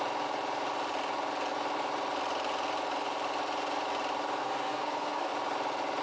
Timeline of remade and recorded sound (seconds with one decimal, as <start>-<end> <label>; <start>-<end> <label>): 0.0-4.4 recorded; 4.4-5.3 remade; 5.3-6.0 recorded